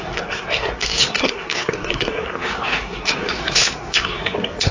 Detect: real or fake fake